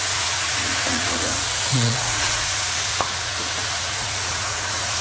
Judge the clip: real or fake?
fake